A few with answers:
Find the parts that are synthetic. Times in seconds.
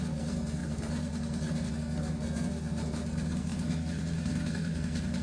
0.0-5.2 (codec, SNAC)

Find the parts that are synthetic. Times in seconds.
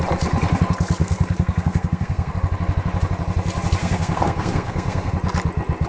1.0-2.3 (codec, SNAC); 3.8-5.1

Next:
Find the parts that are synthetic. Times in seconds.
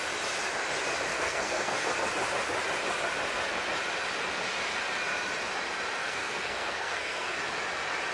1.1-1.9 (codec, SNAC); 6.0-7.4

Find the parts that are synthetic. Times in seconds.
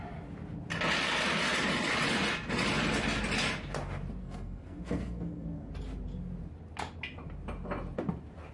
4.2-5.7 (codec, SNAC)